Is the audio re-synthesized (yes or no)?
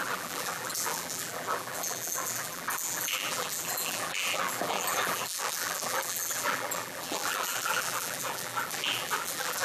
yes